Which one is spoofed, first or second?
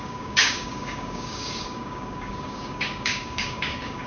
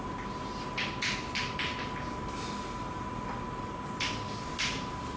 first